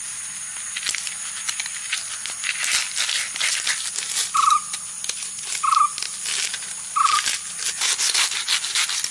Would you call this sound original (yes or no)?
yes